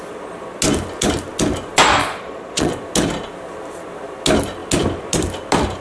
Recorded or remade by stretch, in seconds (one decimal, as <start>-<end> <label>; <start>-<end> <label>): 0.0-2.0 recorded; 2.0-2.7 remade; 2.7-5.8 recorded